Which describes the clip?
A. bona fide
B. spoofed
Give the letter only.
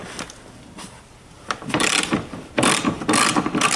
A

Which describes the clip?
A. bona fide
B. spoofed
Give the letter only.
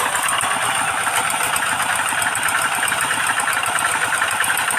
A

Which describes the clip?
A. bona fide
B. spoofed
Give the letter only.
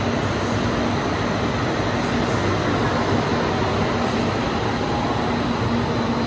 A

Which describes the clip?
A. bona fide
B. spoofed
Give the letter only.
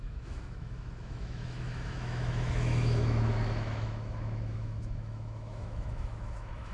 B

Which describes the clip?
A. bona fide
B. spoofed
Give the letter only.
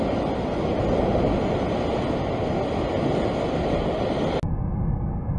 A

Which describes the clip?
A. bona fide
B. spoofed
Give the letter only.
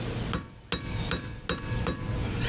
A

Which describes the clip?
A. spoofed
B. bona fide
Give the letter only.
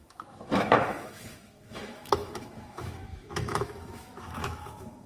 A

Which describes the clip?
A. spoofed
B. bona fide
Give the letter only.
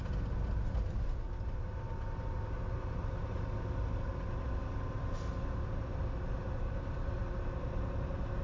B